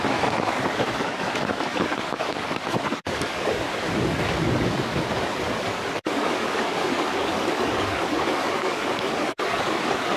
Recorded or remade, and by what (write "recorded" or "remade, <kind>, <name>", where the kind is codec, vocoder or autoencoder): remade, codec, DAC